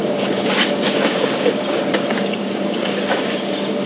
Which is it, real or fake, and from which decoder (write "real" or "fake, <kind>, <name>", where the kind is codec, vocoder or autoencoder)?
fake, codec, DAC